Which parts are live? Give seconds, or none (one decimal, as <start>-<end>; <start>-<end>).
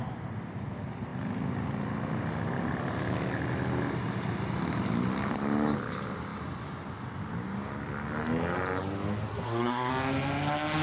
0.0-9.3; 9.9-10.8